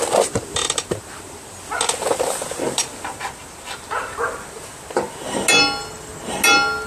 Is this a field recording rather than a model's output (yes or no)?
yes